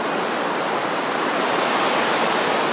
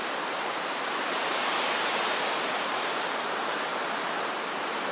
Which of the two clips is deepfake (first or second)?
second